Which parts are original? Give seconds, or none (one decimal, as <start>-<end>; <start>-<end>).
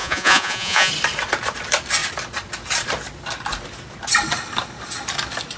0.9-5.6